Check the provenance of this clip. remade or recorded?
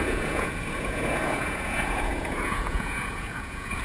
remade